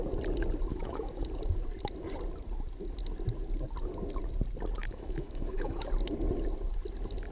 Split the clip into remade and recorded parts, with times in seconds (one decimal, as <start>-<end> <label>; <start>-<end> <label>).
0.0-0.7 recorded; 0.7-1.2 remade; 1.2-4.8 recorded; 4.8-5.9 remade; 5.9-7.3 recorded